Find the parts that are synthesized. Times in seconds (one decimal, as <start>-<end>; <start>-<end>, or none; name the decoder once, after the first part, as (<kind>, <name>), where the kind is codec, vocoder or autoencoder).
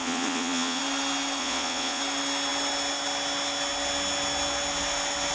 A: 0.0-0.8 (vocoder, Vocos); 1.4-2.0